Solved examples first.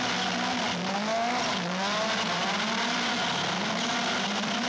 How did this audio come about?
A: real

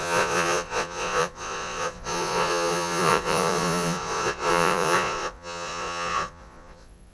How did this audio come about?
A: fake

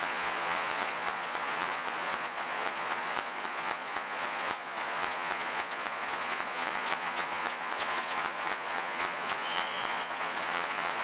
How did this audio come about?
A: fake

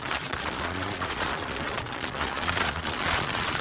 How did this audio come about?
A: fake